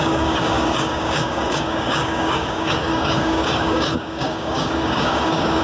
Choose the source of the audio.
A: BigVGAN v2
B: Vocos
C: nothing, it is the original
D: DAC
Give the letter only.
D